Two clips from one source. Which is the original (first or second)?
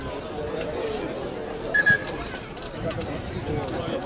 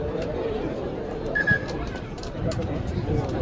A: first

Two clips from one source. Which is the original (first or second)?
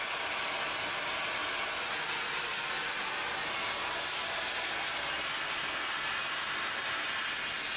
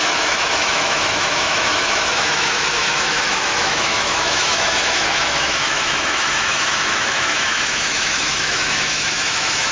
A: first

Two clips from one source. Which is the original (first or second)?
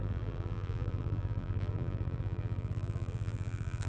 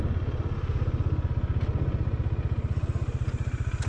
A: second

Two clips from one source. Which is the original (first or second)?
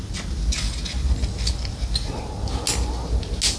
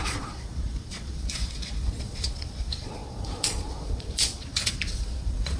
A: first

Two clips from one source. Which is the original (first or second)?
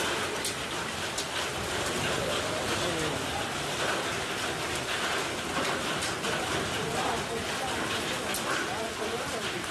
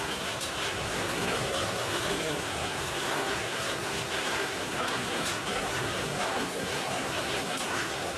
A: first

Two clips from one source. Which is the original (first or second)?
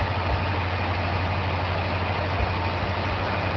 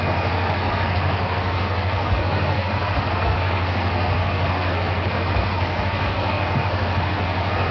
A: first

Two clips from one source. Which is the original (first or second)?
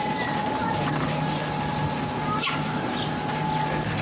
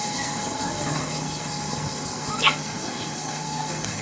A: first